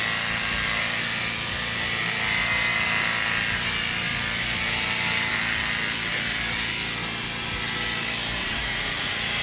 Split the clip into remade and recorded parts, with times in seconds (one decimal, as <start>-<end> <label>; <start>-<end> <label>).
0.0-8.4 recorded; 8.4-9.4 remade